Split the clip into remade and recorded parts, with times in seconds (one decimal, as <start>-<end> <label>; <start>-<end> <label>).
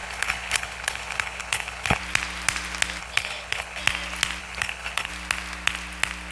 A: 0.0-2.0 remade; 2.0-3.0 recorded; 3.0-3.8 remade; 3.8-4.4 recorded; 4.4-5.1 remade; 5.1-6.3 recorded